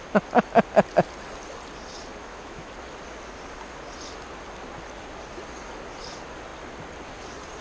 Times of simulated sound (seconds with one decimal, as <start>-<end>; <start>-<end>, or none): 2.2-2.7